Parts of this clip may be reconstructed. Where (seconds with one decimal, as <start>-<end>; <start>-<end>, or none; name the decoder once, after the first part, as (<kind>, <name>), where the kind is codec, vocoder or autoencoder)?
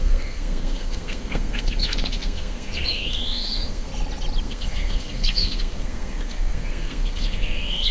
0.0-3.9 (codec, SNAC); 4.4-7.9